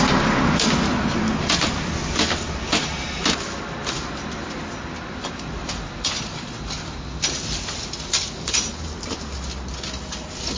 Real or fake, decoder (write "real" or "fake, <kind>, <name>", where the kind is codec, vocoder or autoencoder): real